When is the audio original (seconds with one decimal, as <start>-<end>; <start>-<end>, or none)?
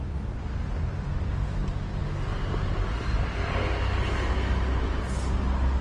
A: 0.0-5.8